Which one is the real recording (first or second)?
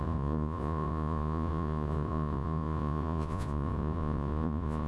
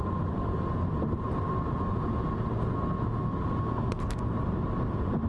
second